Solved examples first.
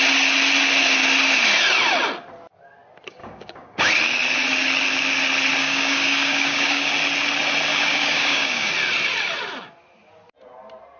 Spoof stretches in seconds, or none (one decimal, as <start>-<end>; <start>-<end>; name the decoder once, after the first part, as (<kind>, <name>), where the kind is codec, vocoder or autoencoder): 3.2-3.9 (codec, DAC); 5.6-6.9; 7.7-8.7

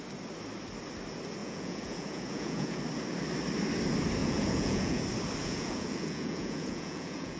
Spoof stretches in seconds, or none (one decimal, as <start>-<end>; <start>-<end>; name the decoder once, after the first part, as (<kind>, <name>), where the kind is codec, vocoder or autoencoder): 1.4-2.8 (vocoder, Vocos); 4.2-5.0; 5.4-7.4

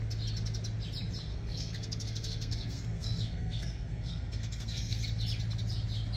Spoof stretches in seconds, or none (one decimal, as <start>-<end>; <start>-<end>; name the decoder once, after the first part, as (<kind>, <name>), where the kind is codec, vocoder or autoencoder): 1.3-5.0 (codec, SNAC)

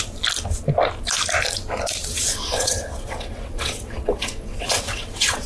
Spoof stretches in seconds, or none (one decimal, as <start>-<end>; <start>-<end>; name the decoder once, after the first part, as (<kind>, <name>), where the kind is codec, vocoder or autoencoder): 2.0-5.5 (vocoder, WaveNeXt)

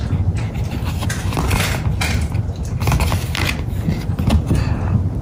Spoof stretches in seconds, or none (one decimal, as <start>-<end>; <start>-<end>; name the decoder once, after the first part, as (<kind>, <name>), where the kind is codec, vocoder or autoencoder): none